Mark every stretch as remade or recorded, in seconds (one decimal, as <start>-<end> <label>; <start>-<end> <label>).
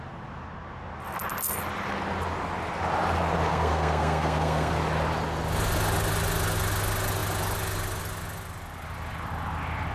0.0-3.5 recorded; 3.5-4.7 remade; 4.7-9.9 recorded